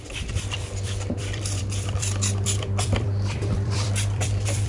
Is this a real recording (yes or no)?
no